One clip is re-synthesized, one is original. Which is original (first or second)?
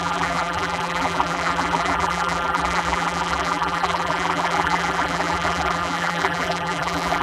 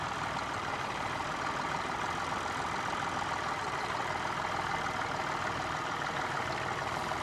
second